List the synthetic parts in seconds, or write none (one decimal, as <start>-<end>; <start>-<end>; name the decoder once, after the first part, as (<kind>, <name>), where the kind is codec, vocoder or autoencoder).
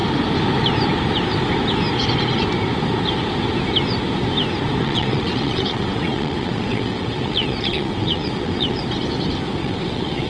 4.8-8.8 (vocoder, WaveNeXt); 9.6-10.3